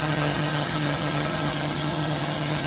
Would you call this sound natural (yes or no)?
no